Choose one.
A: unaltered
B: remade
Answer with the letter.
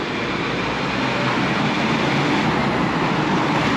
A